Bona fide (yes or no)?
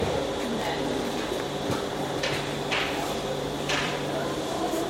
no